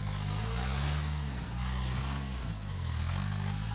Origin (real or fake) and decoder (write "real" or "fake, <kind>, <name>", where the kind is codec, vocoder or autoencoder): fake, codec, SNAC